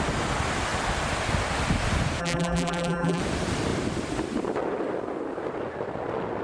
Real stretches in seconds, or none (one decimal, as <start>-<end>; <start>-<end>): 0.0-2.2; 3.2-6.4